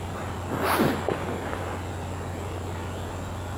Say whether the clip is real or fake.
real